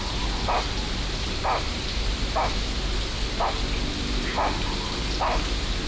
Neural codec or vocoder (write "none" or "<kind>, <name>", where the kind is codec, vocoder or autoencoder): none